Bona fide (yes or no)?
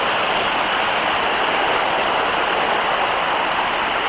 yes